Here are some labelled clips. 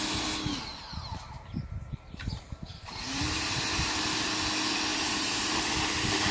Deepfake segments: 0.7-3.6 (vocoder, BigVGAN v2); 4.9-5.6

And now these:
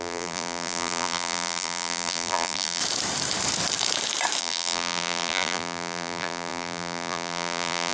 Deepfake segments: 0.0-2.8 (vocoder, BigVGAN v2); 4.4-7.9

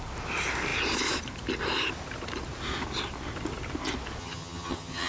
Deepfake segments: 4.2-5.1 (vocoder, HiFi-GAN)